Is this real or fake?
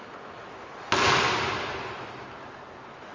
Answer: real